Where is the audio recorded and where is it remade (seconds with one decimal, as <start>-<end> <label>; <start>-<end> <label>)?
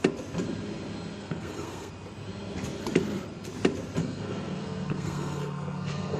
0.0-1.2 recorded; 1.2-1.9 remade; 1.9-4.0 recorded; 4.0-6.2 remade